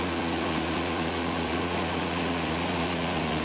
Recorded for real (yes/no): no